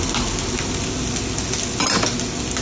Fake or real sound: real